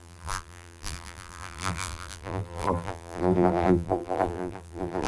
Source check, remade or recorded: remade